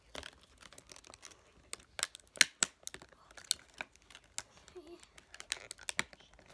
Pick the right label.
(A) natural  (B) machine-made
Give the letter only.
A